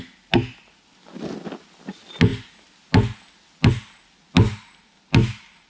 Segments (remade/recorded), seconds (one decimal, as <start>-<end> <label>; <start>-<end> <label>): 0.0-5.7 recorded

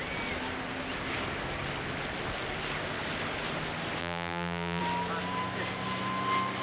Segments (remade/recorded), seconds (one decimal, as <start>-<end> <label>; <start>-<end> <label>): 0.0-4.0 recorded; 4.0-4.8 remade; 4.8-6.6 recorded

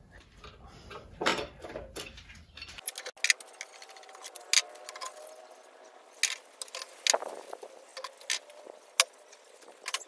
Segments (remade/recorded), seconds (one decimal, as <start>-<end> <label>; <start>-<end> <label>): 0.0-10.1 recorded

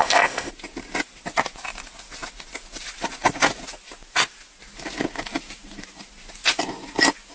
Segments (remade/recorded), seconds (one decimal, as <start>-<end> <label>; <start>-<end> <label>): 0.0-0.5 remade; 0.5-7.3 recorded

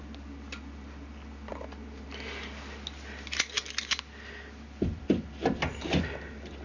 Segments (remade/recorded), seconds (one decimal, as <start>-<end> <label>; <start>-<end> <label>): 0.0-6.6 recorded

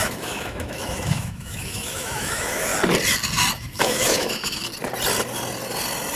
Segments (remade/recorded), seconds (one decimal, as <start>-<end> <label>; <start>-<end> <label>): 0.0-2.7 remade; 2.7-3.5 recorded; 3.5-4.6 remade; 4.6-6.2 recorded

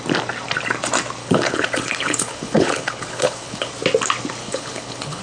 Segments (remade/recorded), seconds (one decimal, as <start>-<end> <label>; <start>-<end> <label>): 0.0-1.2 recorded; 1.2-3.7 remade; 3.7-4.4 recorded; 4.4-5.2 remade